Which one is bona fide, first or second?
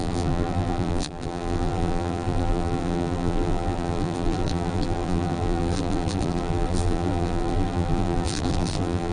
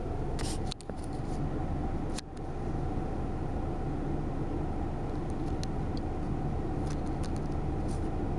second